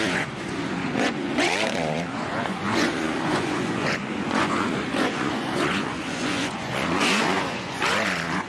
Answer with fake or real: fake